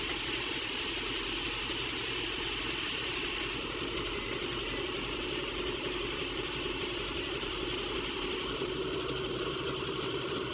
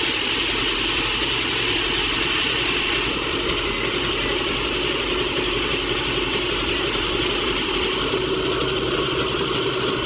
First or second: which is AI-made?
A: first